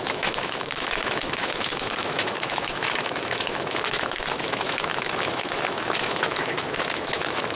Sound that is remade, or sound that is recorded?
remade